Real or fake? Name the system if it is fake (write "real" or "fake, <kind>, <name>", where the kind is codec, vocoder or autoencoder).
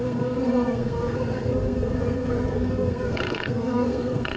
fake, codec, SNAC